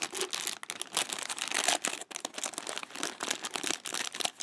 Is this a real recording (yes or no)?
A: yes